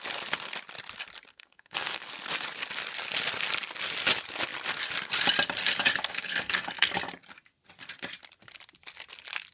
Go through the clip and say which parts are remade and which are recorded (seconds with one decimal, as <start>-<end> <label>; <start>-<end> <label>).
0.0-1.3 recorded; 1.3-2.0 remade; 2.0-6.0 recorded; 6.0-6.9 remade; 6.9-9.5 recorded